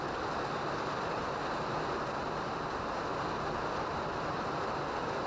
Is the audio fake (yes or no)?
no